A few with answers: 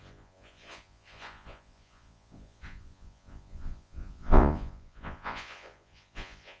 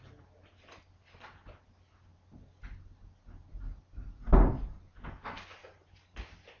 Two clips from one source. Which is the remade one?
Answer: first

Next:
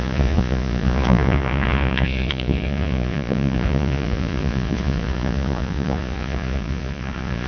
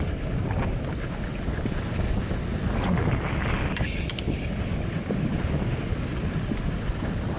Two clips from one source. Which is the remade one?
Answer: first